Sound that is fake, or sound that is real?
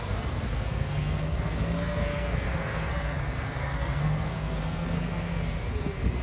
fake